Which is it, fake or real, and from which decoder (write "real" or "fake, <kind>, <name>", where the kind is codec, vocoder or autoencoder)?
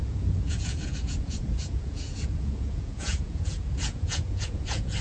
fake, vocoder, Vocos